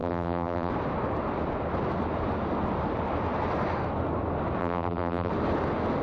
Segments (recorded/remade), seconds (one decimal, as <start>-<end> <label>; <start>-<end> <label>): 0.0-0.7 remade; 0.7-4.6 recorded; 4.6-5.3 remade; 5.3-6.0 recorded